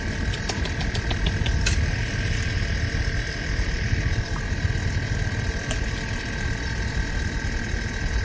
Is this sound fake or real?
real